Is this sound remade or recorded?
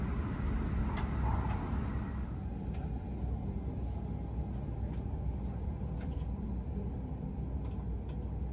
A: recorded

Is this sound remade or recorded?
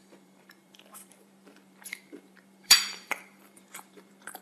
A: remade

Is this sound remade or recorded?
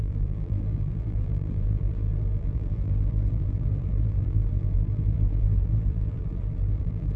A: remade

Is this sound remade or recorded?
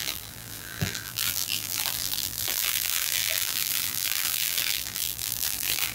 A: remade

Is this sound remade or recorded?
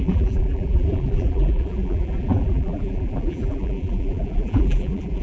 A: remade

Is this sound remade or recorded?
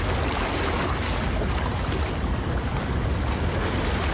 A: recorded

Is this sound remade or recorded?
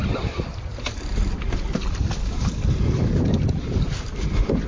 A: remade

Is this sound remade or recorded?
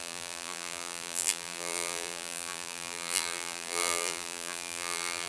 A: remade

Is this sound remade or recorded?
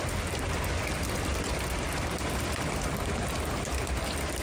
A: recorded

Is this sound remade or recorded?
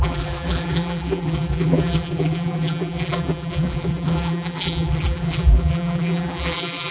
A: remade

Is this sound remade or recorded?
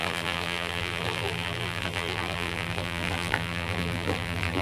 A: remade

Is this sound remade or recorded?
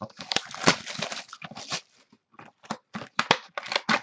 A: recorded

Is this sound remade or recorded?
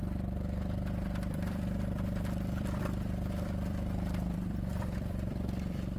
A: remade